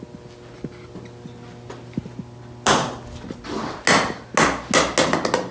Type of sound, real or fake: real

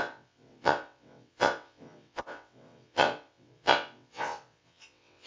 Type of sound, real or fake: fake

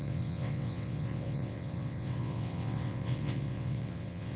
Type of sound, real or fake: fake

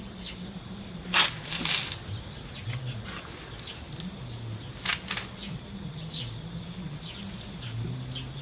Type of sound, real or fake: real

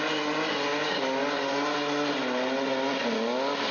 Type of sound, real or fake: real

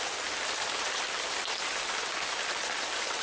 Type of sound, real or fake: real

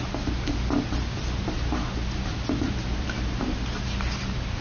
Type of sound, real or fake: real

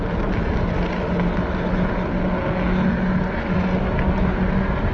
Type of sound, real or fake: real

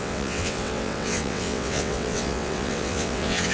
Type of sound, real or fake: fake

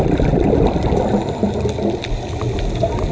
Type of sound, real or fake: real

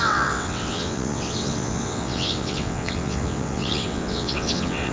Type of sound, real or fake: fake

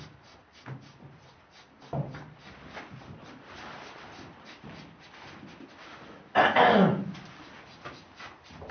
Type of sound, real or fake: real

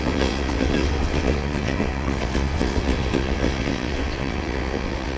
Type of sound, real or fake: fake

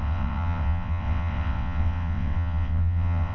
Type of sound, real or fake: fake